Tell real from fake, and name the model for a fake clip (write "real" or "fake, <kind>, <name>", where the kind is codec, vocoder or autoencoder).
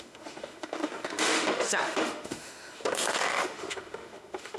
fake, autoencoder, DAC-VAE